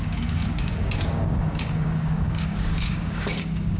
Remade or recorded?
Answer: remade